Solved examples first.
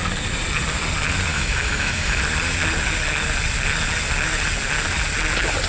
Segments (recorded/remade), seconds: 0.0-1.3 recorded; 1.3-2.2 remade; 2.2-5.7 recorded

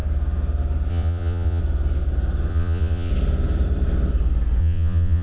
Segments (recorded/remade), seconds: 0.0-0.9 recorded; 0.9-1.6 remade; 1.6-2.5 recorded; 2.5-3.1 remade; 3.1-4.6 recorded; 4.6-5.2 remade

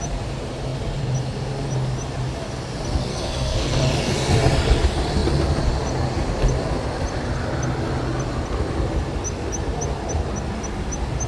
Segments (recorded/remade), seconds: 0.0-3.1 recorded; 3.1-3.8 remade; 3.8-11.3 recorded